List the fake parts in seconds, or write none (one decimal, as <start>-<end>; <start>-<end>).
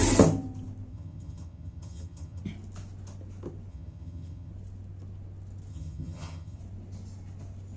0.9-2.4; 3.7-4.5; 5.7-6.6